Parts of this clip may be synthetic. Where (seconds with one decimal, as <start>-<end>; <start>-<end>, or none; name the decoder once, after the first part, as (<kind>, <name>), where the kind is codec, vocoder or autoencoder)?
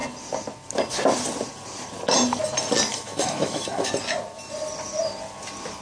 2.9-3.9 (autoencoder, DAC-VAE)